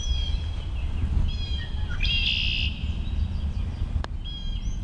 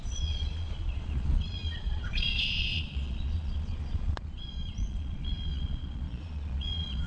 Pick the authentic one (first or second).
first